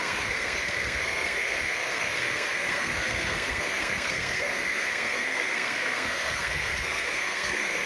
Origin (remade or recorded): remade